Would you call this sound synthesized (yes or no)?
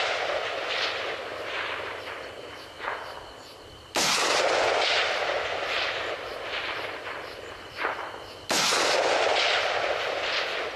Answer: no